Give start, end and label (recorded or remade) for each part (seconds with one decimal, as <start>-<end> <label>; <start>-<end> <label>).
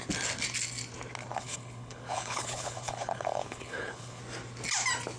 0.0-1.3 recorded; 1.3-4.2 remade; 4.2-5.2 recorded